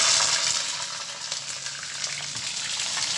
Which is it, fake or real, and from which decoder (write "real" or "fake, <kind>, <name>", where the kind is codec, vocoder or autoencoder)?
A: real